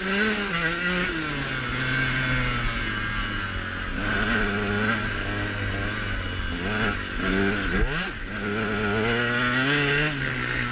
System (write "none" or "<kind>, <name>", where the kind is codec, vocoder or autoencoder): none